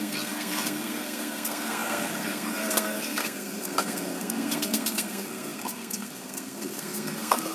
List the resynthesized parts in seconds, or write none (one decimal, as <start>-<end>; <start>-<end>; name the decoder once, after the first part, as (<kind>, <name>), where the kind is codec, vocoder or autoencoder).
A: 0.0-7.5 (codec, SNAC)